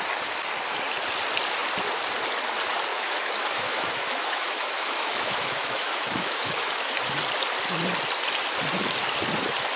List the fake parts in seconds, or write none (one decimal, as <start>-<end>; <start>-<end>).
2.9-7.0